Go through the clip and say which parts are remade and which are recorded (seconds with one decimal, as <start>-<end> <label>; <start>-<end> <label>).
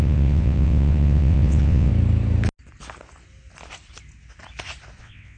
0.0-1.9 remade; 1.9-5.0 recorded; 5.0-5.4 remade